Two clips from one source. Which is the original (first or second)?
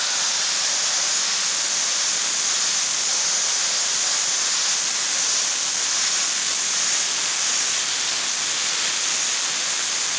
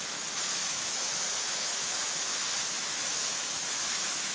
first